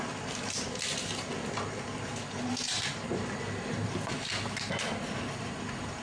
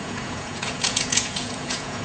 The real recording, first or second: first